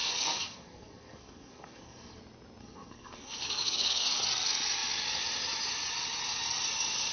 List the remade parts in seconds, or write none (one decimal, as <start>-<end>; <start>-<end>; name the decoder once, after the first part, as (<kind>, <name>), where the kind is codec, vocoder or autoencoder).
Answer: 0.0-2.2 (codec, SNAC); 2.6-4.2